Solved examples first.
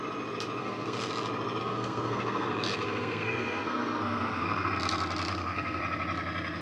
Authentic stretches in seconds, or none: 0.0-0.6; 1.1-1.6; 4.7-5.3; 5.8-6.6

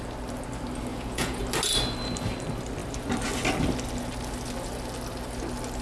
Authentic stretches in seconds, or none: 0.0-0.9; 1.4-5.8

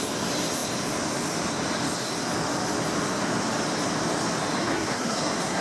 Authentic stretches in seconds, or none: 0.0-4.6

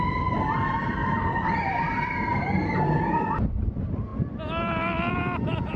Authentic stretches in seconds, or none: 0.0-4.1; 5.1-5.8

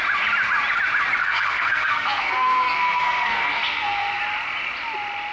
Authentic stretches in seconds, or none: 0.0-1.2; 4.2-5.3

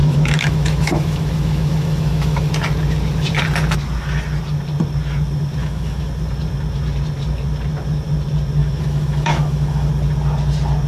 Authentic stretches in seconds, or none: 2.5-5.6; 6.1-8.6; 9.9-10.9

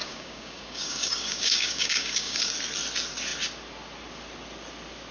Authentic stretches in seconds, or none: 2.5-5.1